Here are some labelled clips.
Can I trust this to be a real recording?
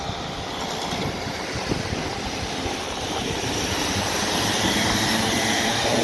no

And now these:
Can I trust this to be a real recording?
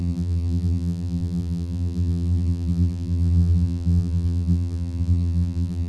no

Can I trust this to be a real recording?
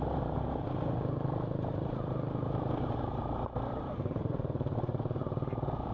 no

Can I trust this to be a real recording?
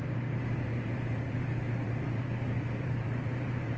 no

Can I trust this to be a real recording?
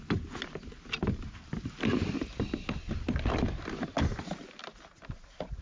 yes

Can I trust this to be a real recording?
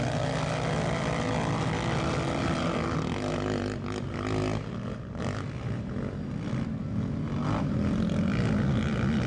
yes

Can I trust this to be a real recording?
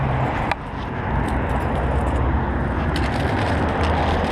yes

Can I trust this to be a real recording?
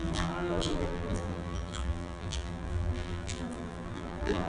no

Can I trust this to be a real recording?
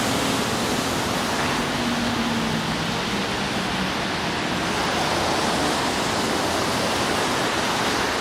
yes